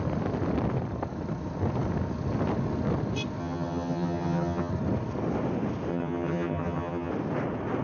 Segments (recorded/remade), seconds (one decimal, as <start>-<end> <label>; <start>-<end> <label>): 0.0-3.4 recorded; 3.4-4.7 remade; 4.7-5.9 recorded; 5.9-7.1 remade; 7.1-7.8 recorded